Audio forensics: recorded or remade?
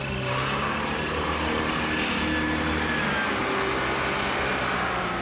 recorded